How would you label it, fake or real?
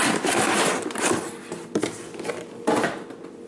real